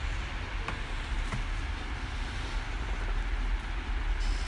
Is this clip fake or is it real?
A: real